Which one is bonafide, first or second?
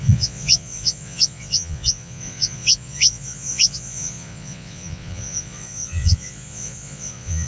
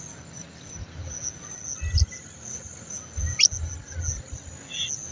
second